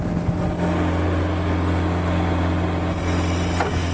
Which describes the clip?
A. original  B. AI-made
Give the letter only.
A